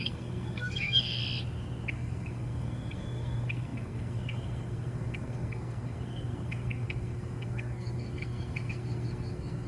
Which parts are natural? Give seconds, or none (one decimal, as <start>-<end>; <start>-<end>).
1.2-1.9